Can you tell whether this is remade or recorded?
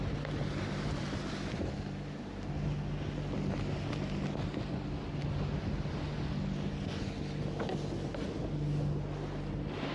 recorded